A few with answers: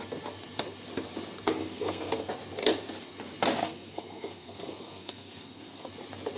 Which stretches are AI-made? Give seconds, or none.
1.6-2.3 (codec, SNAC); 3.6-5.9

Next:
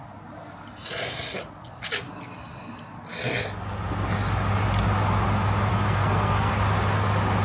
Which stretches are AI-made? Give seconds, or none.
5.7-6.5 (codec, SNAC)

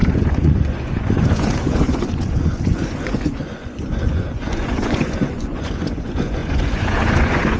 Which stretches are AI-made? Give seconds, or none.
0.0-7.6 (vocoder, Vocos)

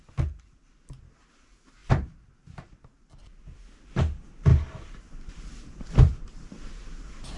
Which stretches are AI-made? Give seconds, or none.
1.8-3.4 (vocoder, BigVGAN v2); 4.5-6.8

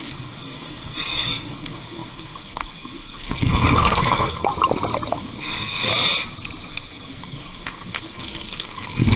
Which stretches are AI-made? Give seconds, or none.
0.0-4.5 (codec, SNAC); 5.1-5.9; 6.7-9.2

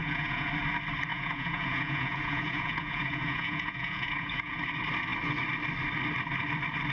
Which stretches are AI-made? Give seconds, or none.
0.0-0.5 (vocoder, Vocos); 1.1-4.6

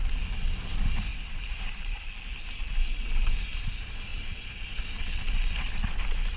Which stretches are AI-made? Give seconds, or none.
1.1-2.1 (vocoder, BigVGAN v2); 4.1-4.8